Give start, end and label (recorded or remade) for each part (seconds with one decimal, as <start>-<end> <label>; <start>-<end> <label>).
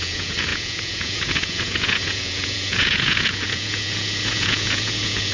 0.0-5.3 remade